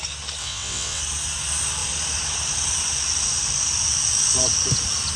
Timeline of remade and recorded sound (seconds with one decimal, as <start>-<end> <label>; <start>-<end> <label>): 0.0-0.4 recorded; 0.4-1.0 remade; 1.0-5.2 recorded